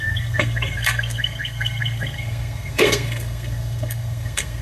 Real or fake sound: fake